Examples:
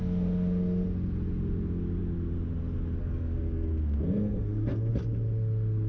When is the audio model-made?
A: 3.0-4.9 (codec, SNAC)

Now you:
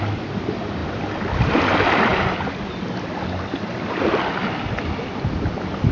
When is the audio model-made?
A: 0.0-0.8 (vocoder, BigVGAN v2); 1.6-2.1

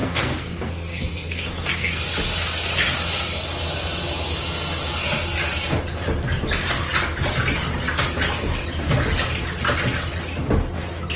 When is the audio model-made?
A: 0.0-2.0 (codec, SNAC)

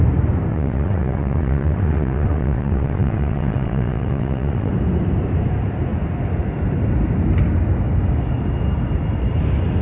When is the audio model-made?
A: 0.5-4.7 (vocoder, WaveNeXt)

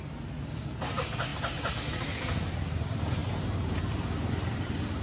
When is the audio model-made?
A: 0.0-1.3 (vocoder, BigVGAN v2); 2.5-3.2; 4.3-5.0

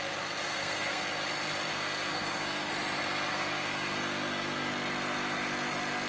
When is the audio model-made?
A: 0.0-1.0 (codec, SNAC); 1.7-2.7; 3.3-4.7

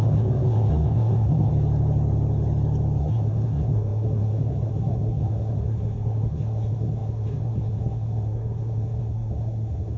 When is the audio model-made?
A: 0.0-1.5 (codec, SNAC); 3.0-10.0